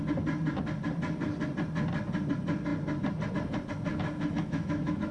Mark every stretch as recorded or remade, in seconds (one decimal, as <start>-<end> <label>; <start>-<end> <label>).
0.0-3.9 recorded; 3.9-5.1 remade